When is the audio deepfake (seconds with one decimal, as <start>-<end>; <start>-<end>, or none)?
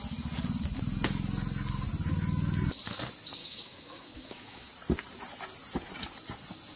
3.4-4.7